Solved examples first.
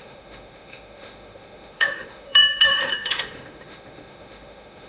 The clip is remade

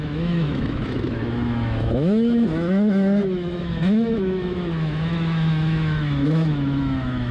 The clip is remade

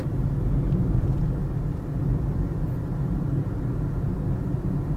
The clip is recorded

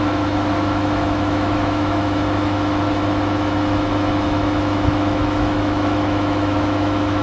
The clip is remade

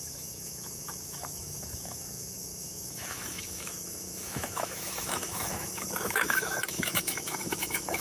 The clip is remade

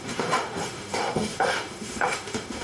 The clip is remade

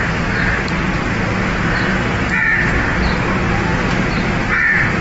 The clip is recorded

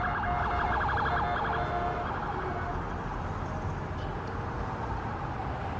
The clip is recorded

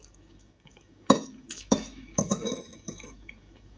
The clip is remade